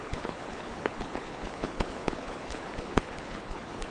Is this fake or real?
fake